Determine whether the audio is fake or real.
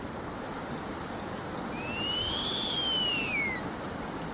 real